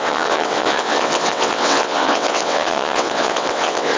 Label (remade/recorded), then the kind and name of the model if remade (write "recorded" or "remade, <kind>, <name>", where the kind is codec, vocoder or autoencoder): remade, vocoder, WaveNeXt